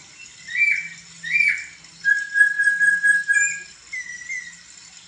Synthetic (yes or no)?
no